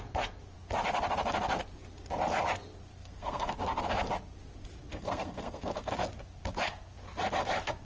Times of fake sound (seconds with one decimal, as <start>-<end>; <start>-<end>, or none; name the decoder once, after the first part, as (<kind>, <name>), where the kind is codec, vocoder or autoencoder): 3.0-3.5 (codec, SNAC); 4.9-5.9